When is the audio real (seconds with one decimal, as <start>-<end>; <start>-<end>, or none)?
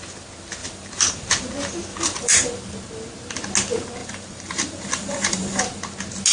0.0-0.6; 1.3-1.9; 2.5-4.0; 5.8-6.3